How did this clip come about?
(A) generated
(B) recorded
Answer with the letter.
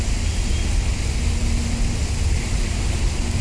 B